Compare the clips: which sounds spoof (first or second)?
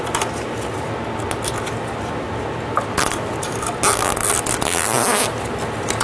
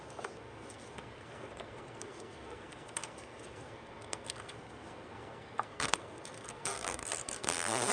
second